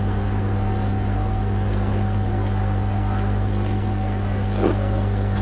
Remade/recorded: remade